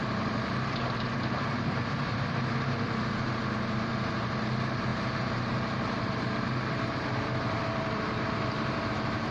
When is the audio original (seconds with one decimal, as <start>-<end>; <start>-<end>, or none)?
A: none